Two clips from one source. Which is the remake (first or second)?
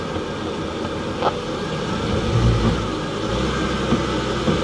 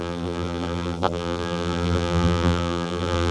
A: second